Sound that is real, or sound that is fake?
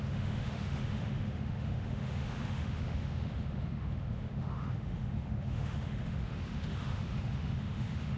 fake